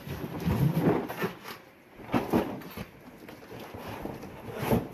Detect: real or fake real